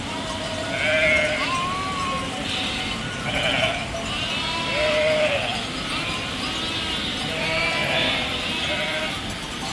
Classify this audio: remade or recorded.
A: recorded